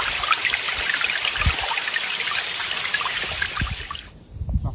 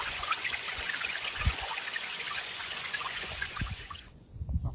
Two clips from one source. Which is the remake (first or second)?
second